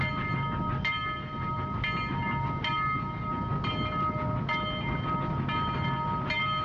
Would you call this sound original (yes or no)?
yes